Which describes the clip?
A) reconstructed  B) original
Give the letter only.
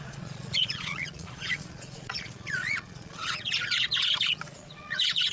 A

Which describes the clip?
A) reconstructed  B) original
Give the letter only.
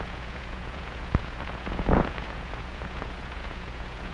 A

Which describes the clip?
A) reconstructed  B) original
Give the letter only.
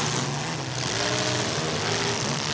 B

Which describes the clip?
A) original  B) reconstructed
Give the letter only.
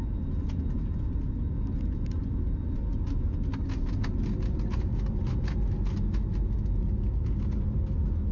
A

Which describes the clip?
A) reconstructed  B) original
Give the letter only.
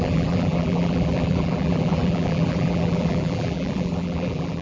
A